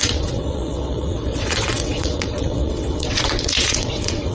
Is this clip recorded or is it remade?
remade